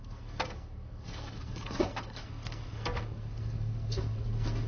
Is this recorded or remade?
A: remade